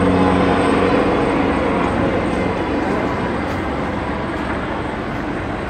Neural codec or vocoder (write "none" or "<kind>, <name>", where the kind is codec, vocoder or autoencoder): none